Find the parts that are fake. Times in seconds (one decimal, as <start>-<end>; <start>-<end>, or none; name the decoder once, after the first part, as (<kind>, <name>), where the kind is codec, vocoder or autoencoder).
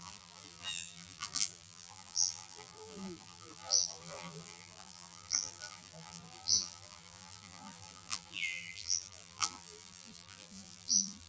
0.0-11.3 (vocoder, BigVGAN v2)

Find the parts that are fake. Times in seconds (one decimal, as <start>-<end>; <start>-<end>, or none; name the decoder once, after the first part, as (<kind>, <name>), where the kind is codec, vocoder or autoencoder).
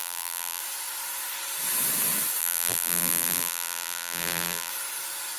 0.0-0.6 (vocoder, BigVGAN v2); 2.4-4.7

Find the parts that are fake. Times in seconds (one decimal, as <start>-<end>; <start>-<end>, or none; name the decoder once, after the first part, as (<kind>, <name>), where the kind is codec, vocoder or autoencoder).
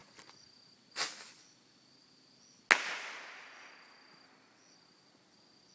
none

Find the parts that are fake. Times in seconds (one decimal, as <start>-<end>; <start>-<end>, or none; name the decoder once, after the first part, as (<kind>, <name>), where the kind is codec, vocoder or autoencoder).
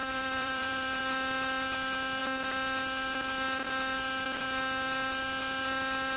0.0-1.0 (vocoder, BigVGAN v2)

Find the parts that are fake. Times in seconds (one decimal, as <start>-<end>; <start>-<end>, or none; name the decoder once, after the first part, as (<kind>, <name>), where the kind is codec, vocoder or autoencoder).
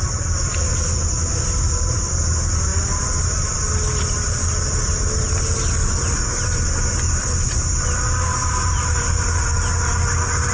8.3-9.0 (vocoder, BigVGAN v2)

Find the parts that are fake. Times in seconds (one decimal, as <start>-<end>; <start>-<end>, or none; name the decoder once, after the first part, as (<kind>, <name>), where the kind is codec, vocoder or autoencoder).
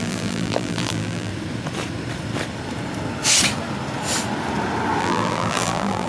0.0-1.3 (vocoder, BigVGAN v2); 5.0-6.1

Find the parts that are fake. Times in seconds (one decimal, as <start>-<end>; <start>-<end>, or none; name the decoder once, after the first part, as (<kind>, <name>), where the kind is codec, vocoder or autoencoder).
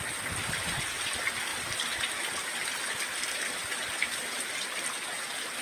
0.0-1.5 (vocoder, BigVGAN v2); 3.0-3.6; 4.6-5.6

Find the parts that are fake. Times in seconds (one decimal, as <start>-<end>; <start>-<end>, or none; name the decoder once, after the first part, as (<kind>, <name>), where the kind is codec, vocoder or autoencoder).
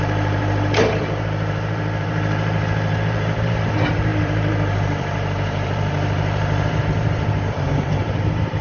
0.0-8.6 (vocoder, BigVGAN v2)